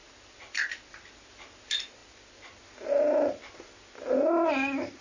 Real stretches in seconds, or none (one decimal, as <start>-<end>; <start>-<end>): 0.0-5.0